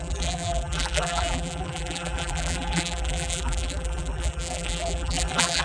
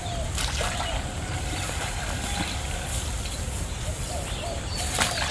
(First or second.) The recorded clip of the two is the second